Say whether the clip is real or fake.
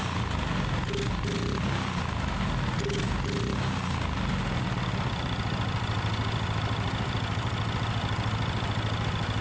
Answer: real